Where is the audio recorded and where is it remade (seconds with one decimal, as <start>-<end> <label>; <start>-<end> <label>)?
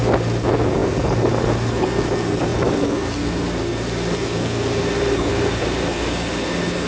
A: 0.0-6.9 recorded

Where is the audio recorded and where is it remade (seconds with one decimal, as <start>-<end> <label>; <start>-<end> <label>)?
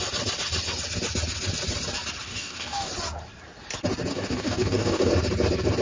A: 0.0-2.3 recorded; 2.3-2.9 remade; 2.9-4.1 recorded; 4.1-5.1 remade; 5.1-5.8 recorded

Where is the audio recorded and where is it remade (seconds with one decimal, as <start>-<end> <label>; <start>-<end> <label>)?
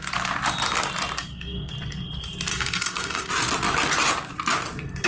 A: 0.0-1.2 recorded; 1.2-1.7 remade; 1.7-2.5 recorded; 2.5-3.3 remade; 3.3-5.1 recorded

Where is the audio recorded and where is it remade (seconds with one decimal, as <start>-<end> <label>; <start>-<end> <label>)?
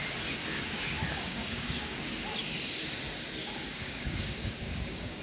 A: 0.0-0.4 recorded; 0.4-2.1 remade; 2.1-3.4 recorded; 3.4-5.2 remade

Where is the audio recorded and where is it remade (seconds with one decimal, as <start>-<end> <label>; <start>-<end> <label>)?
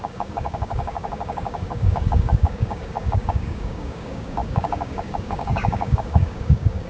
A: 0.0-6.9 remade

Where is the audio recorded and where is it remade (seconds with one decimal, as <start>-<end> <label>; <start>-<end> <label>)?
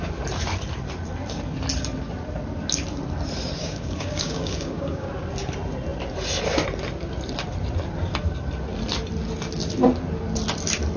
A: 0.0-3.6 recorded; 3.6-5.1 remade; 5.1-11.0 recorded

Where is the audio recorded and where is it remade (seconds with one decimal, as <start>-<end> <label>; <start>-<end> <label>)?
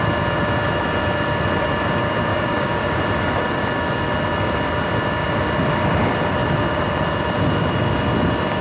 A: 0.0-2.3 recorded; 2.3-3.0 remade; 3.0-8.6 recorded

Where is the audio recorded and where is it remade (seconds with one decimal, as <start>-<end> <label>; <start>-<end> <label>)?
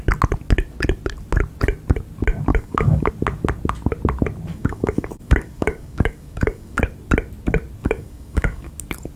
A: 0.0-2.5 recorded; 2.5-3.1 remade; 3.1-4.5 recorded; 4.5-6.8 remade; 6.8-7.8 recorded; 7.8-8.7 remade; 8.7-9.2 recorded